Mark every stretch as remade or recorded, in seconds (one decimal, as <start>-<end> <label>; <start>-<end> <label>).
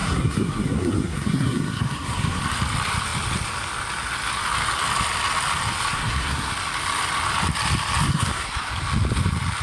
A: 0.0-2.4 remade; 2.4-5.9 recorded; 5.9-6.5 remade; 6.5-8.1 recorded; 8.1-8.7 remade; 8.7-9.6 recorded